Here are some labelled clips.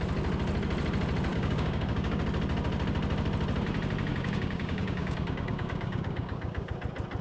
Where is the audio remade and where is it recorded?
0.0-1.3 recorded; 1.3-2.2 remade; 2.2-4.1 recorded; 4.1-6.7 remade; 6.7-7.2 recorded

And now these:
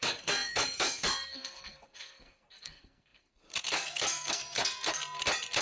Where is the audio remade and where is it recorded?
0.0-5.0 remade; 5.0-5.6 recorded

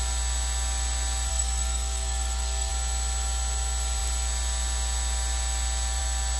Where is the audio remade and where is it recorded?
0.0-1.3 recorded; 1.3-2.7 remade; 2.7-6.4 recorded

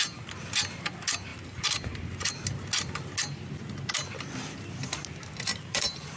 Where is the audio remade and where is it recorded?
0.0-1.3 recorded; 1.3-2.3 remade; 2.3-5.5 recorded; 5.5-6.2 remade